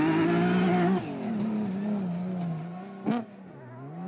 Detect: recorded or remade recorded